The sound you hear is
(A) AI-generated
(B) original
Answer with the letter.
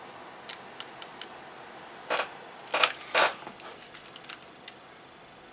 B